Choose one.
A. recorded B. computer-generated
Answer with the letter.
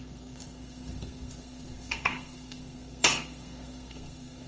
B